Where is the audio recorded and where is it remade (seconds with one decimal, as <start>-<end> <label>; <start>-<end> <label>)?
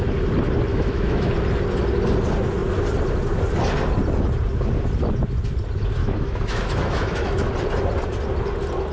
0.0-0.7 recorded; 0.7-1.3 remade; 1.3-6.0 recorded; 6.0-7.5 remade; 7.5-8.9 recorded